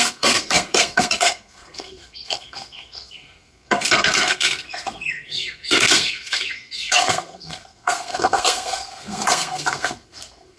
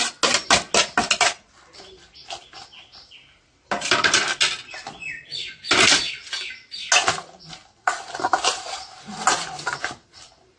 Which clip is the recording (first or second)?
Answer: second